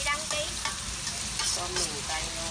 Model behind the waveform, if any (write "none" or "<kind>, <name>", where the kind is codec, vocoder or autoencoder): none